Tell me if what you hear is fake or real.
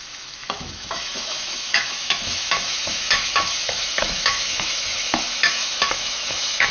fake